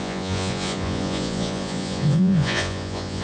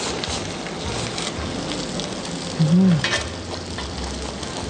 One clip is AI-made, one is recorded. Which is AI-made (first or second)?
first